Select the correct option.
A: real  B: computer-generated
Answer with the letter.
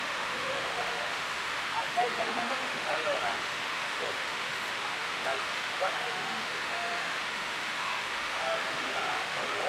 B